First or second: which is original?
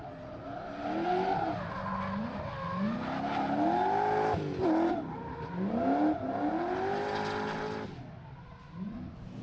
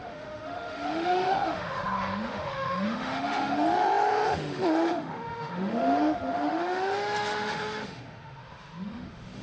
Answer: first